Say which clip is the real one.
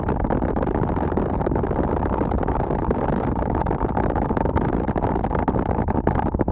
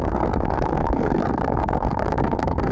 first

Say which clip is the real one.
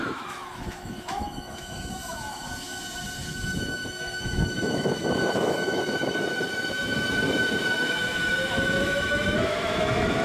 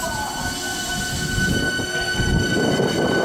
second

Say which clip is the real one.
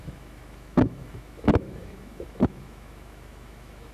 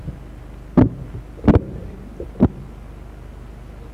second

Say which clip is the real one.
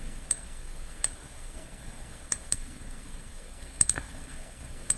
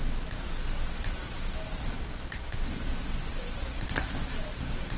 second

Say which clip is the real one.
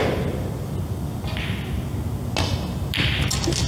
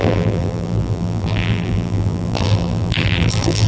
first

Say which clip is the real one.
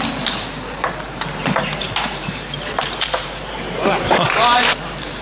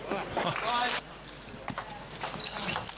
second